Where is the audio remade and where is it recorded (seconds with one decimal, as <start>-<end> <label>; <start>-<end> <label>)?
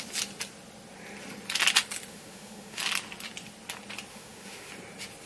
0.0-2.1 recorded; 2.1-2.8 remade; 2.8-4.1 recorded; 4.1-4.7 remade; 4.7-5.3 recorded